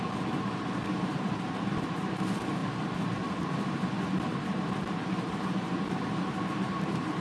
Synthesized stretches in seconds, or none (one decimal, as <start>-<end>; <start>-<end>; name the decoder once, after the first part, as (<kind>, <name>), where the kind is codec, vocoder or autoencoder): 0.0-7.2 (vocoder, BigVGAN v2)